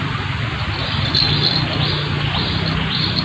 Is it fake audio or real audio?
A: real